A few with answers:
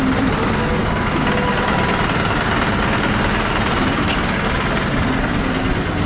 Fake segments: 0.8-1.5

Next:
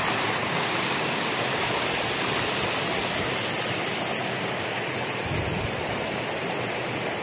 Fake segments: 0.4-1.7; 4.2-4.8

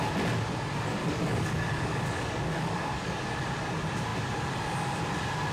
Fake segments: 1.0-3.5

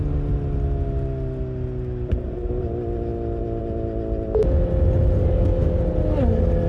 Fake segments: 5.2-5.8

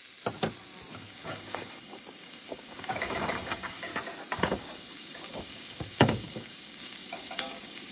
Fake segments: 0.9-3.9; 4.4-7.9

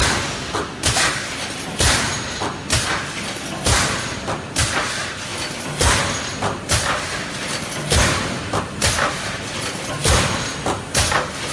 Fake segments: none

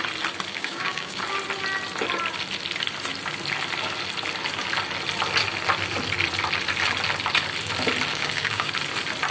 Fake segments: 0.5-1.2; 8.1-8.7

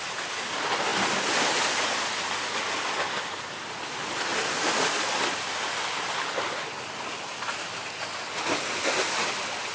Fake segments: none